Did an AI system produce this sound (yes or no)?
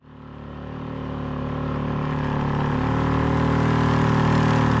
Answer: no